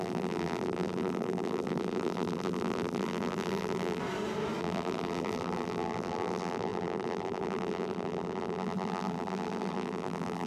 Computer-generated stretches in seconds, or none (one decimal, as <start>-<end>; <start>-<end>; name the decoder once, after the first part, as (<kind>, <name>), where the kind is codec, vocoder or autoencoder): 0.0-4.0 (vocoder, BigVGAN v2); 4.6-10.5